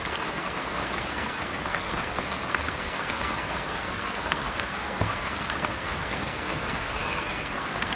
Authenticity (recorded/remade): remade